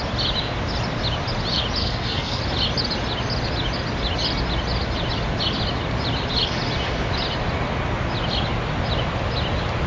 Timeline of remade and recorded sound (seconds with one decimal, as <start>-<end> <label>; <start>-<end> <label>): 0.0-1.8 recorded; 1.8-2.4 remade; 2.4-9.9 recorded